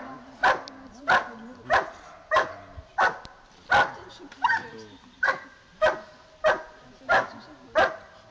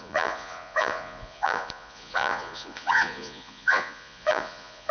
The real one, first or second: first